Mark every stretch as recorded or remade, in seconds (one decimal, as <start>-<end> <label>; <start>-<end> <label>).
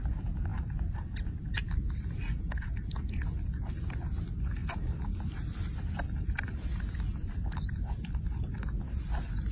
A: 0.0-4.6 recorded; 4.6-5.8 remade; 5.8-9.5 recorded